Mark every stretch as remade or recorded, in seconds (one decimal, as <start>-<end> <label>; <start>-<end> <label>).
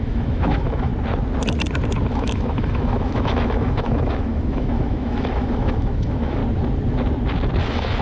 0.0-0.9 remade; 0.9-2.1 recorded; 2.1-6.4 remade; 6.4-7.6 recorded; 7.6-8.0 remade